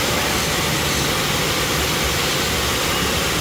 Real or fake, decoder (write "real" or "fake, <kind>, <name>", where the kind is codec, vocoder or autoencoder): real